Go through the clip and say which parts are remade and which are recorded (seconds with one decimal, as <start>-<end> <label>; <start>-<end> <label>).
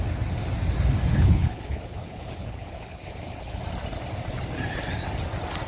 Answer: 0.0-1.1 recorded; 1.1-3.6 remade; 3.6-5.7 recorded